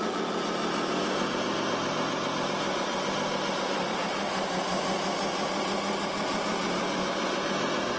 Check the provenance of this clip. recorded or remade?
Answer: recorded